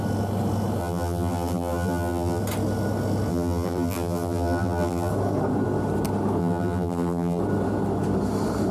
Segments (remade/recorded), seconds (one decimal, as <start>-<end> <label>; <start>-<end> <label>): 0.0-0.8 recorded; 0.8-2.4 remade; 2.4-3.3 recorded; 3.3-5.1 remade; 5.1-6.4 recorded; 6.4-7.4 remade; 7.4-8.7 recorded